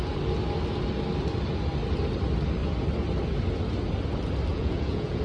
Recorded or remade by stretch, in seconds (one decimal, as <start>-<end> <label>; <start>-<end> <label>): 0.0-4.5 recorded; 4.5-5.2 remade